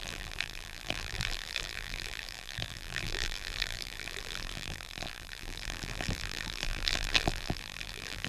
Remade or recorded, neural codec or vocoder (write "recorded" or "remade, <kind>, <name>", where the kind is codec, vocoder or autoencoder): remade, vocoder, BigVGAN v2